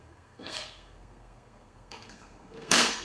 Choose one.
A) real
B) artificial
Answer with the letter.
B